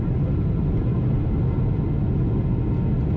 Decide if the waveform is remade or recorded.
recorded